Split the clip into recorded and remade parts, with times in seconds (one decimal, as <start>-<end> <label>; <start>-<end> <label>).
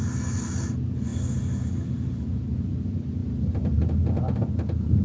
0.0-5.0 recorded